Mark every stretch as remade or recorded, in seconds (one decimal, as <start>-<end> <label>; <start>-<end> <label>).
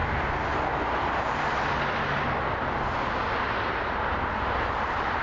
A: 0.0-3.1 recorded; 3.1-5.2 remade